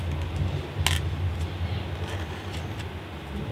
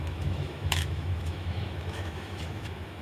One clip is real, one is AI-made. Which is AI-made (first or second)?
second